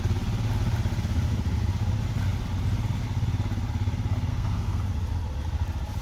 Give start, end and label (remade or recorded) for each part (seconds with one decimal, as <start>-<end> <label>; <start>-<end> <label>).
0.0-4.3 recorded; 4.3-4.8 remade; 4.8-6.0 recorded